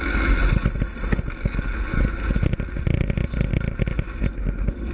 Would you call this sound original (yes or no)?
yes